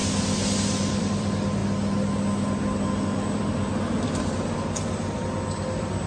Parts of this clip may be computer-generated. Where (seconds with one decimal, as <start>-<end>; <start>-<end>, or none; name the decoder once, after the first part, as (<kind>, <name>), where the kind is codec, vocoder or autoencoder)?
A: 0.9-1.6 (vocoder, BigVGAN v2); 3.2-6.1